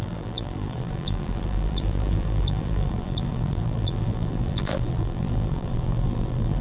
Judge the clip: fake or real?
fake